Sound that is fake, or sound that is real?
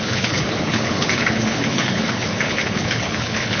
fake